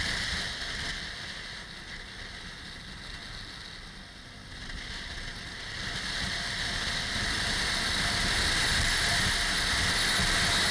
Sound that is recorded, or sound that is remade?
recorded